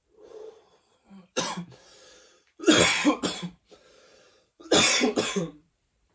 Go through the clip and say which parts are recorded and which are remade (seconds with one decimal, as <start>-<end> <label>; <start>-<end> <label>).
0.0-1.4 remade; 1.4-3.0 recorded; 3.0-6.1 remade